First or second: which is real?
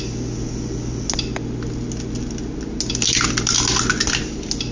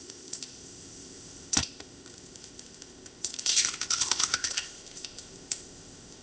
first